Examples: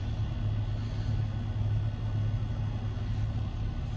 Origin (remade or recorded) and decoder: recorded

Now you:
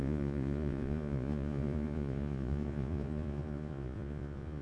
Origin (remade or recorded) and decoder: remade, vocoder, Vocos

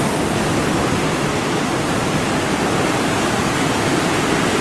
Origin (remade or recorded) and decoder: recorded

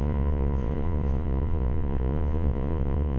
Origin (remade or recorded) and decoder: remade, vocoder, Vocos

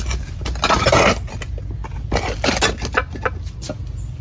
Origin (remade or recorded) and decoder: recorded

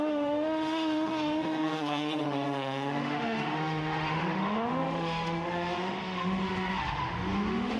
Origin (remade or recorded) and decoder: remade, autoencoder, DAC-VAE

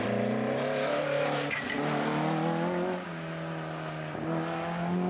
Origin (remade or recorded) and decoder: recorded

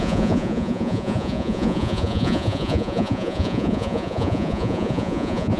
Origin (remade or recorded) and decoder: remade, vocoder, Vocos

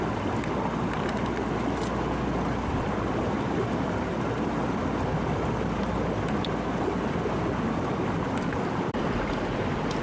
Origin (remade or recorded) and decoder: recorded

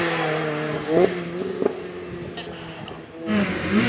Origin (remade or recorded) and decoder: recorded